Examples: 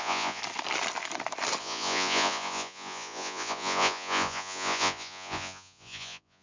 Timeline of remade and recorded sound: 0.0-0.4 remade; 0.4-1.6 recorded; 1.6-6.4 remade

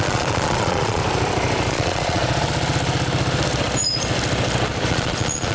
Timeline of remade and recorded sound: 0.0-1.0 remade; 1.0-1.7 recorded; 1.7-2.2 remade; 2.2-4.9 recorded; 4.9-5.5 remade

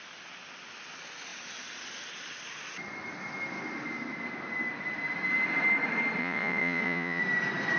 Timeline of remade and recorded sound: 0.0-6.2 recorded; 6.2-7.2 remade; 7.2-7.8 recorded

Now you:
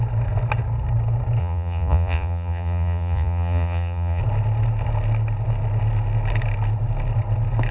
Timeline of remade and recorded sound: 0.0-1.4 recorded; 1.4-4.2 remade; 4.2-7.7 recorded